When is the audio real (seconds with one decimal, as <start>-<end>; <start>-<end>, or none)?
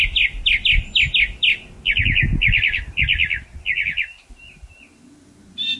0.0-5.8